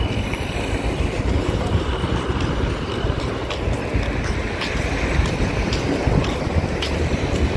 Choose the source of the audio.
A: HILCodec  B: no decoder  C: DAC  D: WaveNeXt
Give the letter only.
B